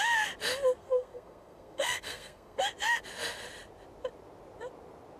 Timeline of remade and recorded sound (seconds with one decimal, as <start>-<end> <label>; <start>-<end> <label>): 0.0-0.8 recorded; 0.8-2.6 remade; 2.6-5.2 recorded